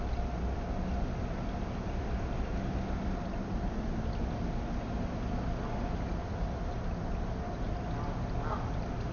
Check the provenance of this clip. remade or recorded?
recorded